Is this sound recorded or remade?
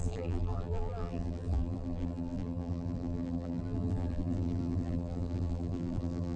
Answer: remade